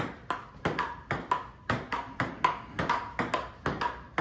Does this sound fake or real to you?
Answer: real